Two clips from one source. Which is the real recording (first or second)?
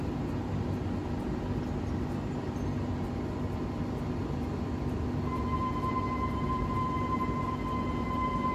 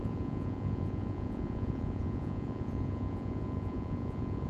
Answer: first